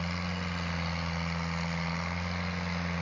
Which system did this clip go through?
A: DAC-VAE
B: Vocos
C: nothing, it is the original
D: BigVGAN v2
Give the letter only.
C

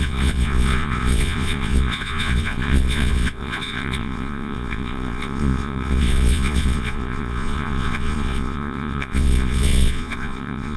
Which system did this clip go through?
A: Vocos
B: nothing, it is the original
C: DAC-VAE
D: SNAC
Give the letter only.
A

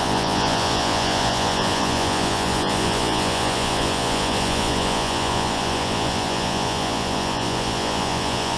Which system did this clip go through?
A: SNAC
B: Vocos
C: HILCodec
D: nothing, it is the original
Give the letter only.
B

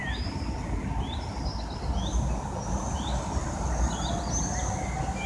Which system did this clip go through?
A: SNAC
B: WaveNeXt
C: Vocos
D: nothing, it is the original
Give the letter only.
D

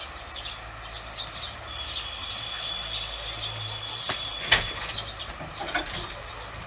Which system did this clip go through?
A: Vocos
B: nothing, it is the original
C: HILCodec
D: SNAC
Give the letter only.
B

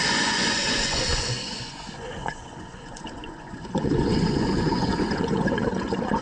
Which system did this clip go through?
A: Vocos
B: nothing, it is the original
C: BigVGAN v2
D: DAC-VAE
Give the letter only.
A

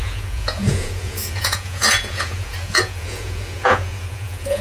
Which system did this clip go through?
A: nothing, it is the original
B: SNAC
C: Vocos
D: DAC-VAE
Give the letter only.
C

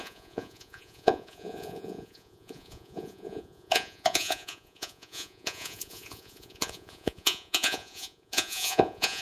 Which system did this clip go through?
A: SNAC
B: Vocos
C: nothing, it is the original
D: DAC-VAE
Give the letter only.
B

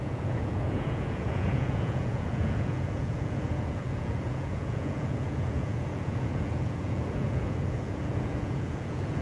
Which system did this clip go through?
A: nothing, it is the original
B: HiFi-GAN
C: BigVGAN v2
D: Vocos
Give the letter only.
D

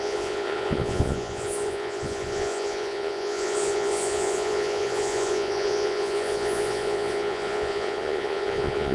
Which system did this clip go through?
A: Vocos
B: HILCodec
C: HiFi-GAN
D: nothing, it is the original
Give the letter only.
A